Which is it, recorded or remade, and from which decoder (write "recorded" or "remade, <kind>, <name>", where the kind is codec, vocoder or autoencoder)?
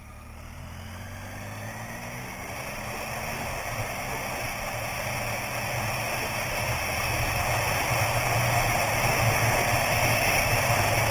recorded